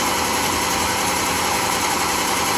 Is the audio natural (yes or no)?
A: no